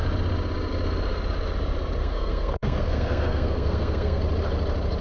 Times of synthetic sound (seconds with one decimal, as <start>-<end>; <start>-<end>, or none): 2.0-4.2